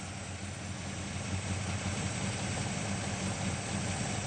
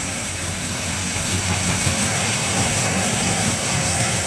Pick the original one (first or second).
first